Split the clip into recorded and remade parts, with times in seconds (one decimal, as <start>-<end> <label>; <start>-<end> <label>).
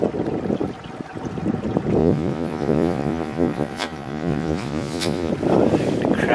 0.0-2.0 recorded; 2.0-5.3 remade; 5.3-6.3 recorded